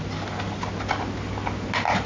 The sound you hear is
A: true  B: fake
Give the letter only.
A